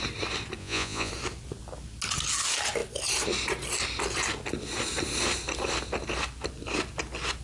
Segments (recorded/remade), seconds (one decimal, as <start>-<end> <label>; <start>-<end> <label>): 0.0-0.6 recorded; 0.6-1.1 remade; 1.1-7.4 recorded